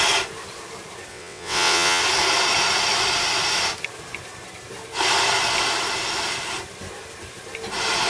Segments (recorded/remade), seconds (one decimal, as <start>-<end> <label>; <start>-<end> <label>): 0.0-1.1 recorded; 1.1-2.0 remade; 2.0-8.1 recorded